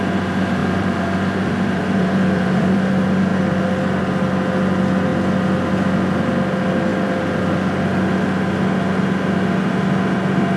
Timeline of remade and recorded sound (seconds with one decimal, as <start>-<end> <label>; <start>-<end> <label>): 0.0-0.6 recorded; 0.6-2.9 remade; 2.9-6.9 recorded; 6.9-7.5 remade; 7.5-10.6 recorded